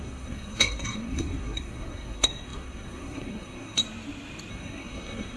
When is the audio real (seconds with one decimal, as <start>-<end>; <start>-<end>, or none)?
3.8-4.5